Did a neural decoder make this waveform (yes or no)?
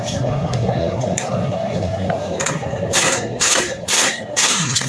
yes